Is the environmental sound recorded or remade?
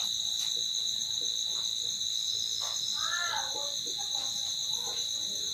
recorded